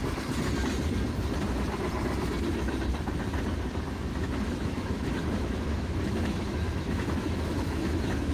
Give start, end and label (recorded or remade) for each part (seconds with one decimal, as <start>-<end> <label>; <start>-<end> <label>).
0.0-4.1 recorded; 4.1-8.3 remade

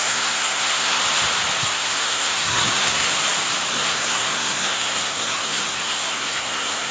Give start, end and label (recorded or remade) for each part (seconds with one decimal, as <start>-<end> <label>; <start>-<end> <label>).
0.0-1.0 remade; 1.0-1.6 recorded; 1.6-3.1 remade; 3.1-3.7 recorded; 3.7-6.9 remade

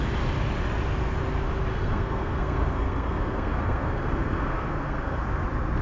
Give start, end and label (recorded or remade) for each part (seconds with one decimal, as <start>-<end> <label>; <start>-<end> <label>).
0.0-1.7 recorded; 1.7-5.2 remade; 5.2-5.8 recorded

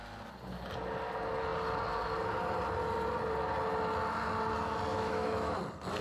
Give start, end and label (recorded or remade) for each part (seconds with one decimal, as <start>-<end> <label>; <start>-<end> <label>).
0.0-4.9 recorded; 4.9-5.6 remade; 5.6-6.0 recorded